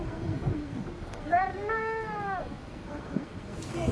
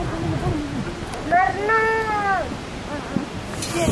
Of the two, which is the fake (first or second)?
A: first